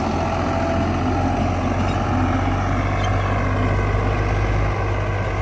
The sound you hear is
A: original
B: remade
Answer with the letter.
A